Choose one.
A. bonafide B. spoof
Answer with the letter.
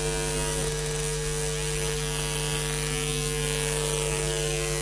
A